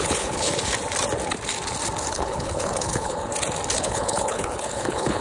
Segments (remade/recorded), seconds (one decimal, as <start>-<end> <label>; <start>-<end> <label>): 0.0-0.5 remade; 0.5-2.1 recorded; 2.1-3.3 remade; 3.3-3.8 recorded; 3.8-5.2 remade